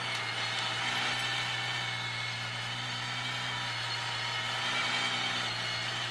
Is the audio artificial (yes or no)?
no